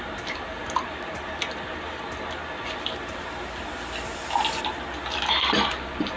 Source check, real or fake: real